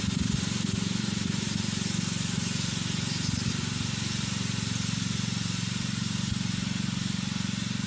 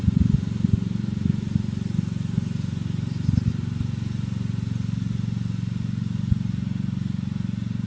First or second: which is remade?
first